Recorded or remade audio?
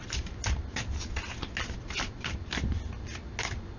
recorded